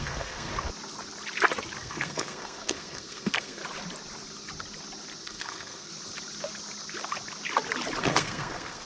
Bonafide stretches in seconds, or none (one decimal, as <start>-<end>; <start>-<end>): 0.5-1.8; 3.6-5.2; 5.9-8.0